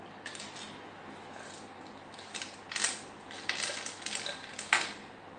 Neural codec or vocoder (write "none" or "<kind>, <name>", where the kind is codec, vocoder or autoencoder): none